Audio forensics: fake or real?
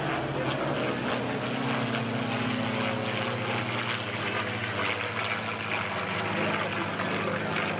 real